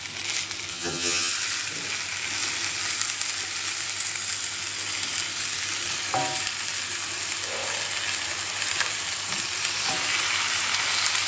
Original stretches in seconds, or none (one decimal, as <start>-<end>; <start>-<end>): 0.0-0.7; 1.3-11.3